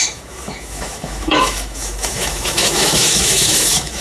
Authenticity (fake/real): fake